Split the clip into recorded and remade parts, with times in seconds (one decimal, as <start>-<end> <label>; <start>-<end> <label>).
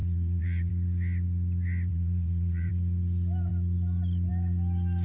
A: 0.0-0.7 remade; 0.7-1.9 recorded; 1.9-2.7 remade; 2.7-5.0 recorded